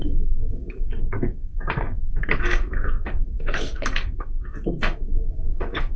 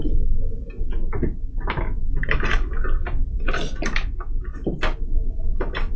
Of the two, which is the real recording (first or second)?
second